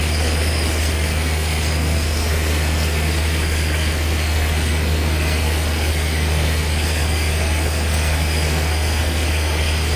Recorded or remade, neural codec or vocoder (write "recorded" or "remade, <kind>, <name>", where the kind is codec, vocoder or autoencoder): remade, codec, SNAC